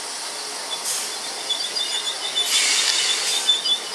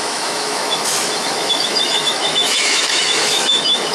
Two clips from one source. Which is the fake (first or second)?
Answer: second